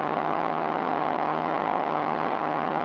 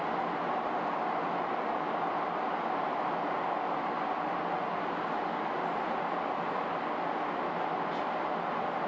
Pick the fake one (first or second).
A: first